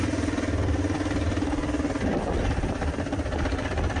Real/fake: real